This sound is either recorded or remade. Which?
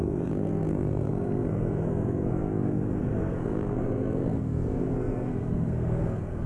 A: remade